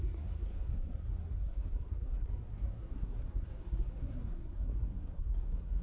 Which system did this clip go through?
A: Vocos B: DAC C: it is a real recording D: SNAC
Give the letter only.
D